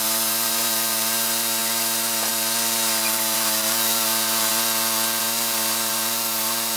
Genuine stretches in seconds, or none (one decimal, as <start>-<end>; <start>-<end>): 4.5-5.2